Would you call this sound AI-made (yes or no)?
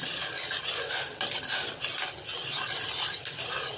no